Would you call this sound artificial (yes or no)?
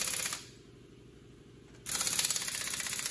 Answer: no